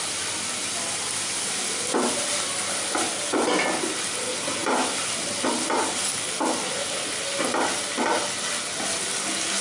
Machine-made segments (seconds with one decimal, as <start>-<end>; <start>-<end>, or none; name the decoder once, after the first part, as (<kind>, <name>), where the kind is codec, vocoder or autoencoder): none